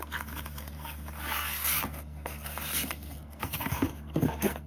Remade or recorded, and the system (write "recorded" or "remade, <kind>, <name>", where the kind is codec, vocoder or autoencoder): remade, codec, SNAC